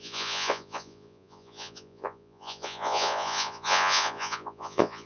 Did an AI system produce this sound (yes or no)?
yes